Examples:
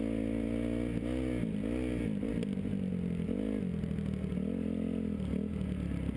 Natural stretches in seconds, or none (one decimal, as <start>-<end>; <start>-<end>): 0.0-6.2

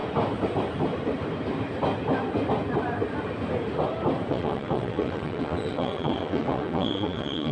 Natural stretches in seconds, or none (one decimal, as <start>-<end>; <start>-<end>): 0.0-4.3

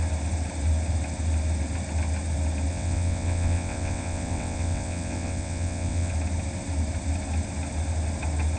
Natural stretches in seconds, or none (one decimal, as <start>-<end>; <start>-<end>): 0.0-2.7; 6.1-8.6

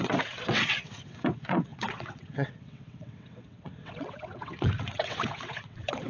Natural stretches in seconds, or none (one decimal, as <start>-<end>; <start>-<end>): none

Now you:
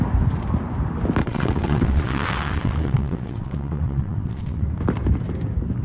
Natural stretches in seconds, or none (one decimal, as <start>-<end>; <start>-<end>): 0.0-1.2; 4.7-5.8

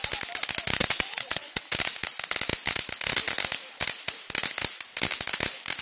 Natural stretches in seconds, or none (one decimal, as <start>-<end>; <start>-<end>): 0.0-0.8; 1.6-5.8

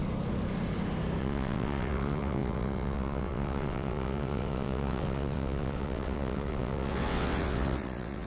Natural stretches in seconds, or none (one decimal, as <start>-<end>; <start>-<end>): 0.0-1.2